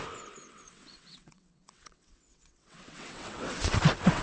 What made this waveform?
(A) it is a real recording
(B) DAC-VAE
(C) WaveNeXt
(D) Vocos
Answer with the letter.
C